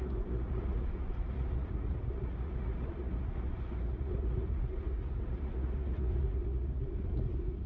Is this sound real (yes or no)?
no